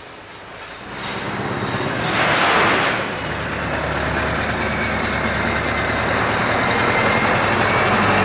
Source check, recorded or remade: recorded